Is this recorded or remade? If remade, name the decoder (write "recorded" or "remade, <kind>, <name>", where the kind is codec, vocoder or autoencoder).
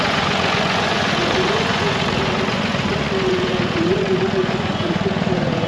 remade, vocoder, Vocos